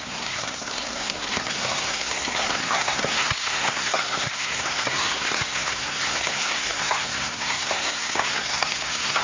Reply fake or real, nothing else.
fake